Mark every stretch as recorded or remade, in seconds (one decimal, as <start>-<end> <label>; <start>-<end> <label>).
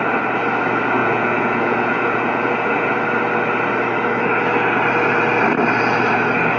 0.0-1.0 recorded; 1.0-2.9 remade; 2.9-6.6 recorded